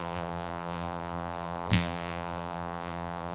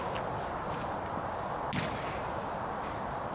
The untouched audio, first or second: second